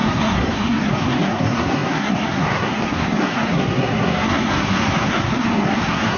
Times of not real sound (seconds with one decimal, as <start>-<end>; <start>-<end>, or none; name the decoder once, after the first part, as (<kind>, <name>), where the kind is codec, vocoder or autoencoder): 0.0-6.2 (codec, SNAC)